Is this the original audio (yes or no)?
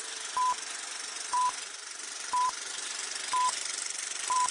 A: no